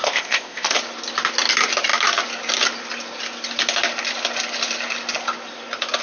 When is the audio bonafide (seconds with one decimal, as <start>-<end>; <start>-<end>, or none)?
0.8-6.0